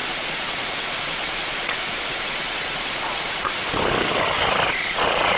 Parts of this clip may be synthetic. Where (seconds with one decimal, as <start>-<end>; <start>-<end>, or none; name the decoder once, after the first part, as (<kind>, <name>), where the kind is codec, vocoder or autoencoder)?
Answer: 0.0-3.6 (vocoder, Vocos); 4.7-5.4